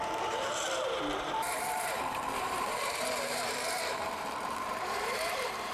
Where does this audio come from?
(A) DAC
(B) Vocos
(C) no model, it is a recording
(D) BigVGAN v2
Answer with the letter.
D